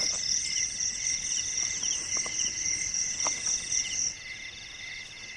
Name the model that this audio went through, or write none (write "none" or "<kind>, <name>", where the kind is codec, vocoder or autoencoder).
none